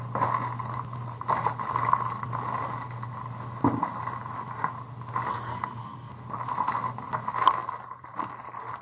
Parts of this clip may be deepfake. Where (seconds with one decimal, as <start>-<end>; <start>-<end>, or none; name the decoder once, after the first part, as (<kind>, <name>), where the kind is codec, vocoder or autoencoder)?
5.3-6.1 (codec, SNAC)